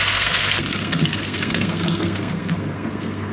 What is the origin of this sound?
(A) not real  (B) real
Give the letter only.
A